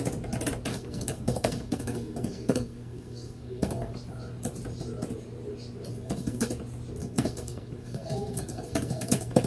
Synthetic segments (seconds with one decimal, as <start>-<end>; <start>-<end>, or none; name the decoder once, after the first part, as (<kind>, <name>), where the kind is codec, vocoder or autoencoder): 0.7-3.9 (codec, SNAC); 5.9-6.5; 7.0-9.5